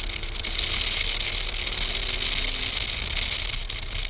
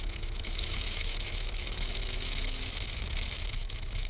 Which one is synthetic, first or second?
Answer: second